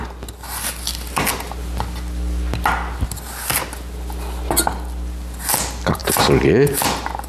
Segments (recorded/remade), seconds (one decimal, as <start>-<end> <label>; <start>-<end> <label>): 0.0-7.3 recorded